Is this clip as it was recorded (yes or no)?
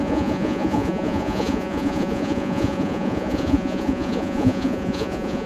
no